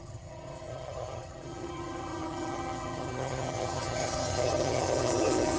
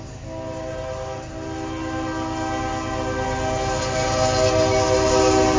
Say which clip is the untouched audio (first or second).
second